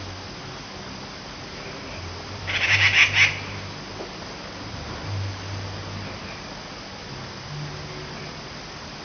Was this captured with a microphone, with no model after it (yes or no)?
yes